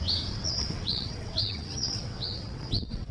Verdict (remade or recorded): remade